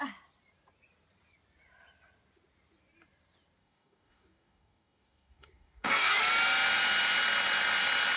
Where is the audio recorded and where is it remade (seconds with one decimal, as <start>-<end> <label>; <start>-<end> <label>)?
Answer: 0.0-3.6 recorded; 3.6-6.2 remade; 6.2-8.2 recorded

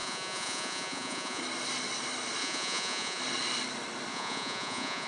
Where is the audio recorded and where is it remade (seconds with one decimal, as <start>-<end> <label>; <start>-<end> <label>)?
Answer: 0.0-1.4 remade; 1.4-2.4 recorded; 2.4-3.2 remade; 3.2-4.1 recorded; 4.1-5.1 remade

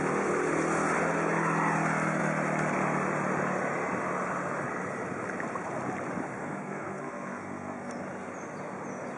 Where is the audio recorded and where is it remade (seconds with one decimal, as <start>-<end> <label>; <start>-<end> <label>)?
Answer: 0.0-6.4 recorded; 6.4-7.9 remade; 7.9-9.2 recorded

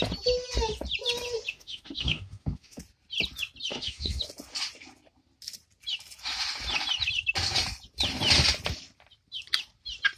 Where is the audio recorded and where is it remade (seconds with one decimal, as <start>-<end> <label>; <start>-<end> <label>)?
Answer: 0.0-1.5 recorded; 1.5-2.8 remade; 2.8-3.7 recorded; 3.7-4.2 remade; 4.2-10.2 recorded

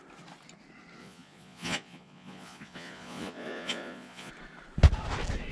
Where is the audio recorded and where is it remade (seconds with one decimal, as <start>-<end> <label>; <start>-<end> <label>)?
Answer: 0.0-1.0 recorded; 1.0-4.3 remade; 4.3-5.5 recorded

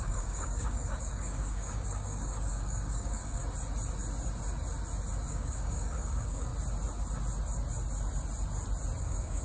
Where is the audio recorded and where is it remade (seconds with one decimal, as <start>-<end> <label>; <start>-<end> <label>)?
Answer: 0.0-3.4 remade; 3.4-5.3 recorded; 5.3-6.5 remade; 6.5-9.0 recorded; 9.0-9.4 remade